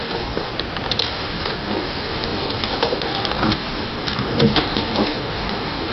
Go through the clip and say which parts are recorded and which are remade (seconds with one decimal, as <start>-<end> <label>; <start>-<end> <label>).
0.0-0.5 remade; 0.5-1.0 recorded; 1.0-5.9 remade